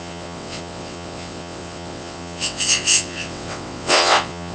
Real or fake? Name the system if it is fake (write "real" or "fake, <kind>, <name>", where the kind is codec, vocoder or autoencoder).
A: fake, vocoder, WaveNeXt